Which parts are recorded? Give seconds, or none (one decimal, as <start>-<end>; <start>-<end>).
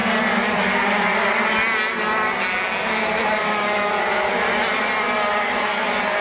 0.0-3.4; 3.9-6.2